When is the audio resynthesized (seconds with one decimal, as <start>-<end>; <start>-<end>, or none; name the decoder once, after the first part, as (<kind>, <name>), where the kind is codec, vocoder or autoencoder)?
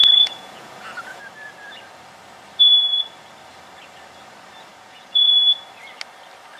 0.0-1.2 (vocoder, Vocos); 4.7-5.3